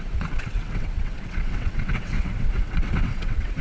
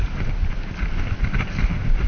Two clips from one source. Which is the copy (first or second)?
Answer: first